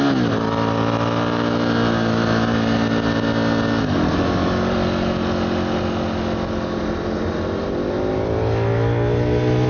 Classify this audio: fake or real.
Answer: real